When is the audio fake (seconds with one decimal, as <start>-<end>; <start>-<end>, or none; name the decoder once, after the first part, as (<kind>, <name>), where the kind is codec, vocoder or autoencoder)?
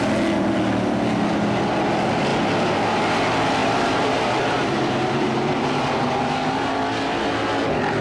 3.6-6.8 (vocoder, BigVGAN v2)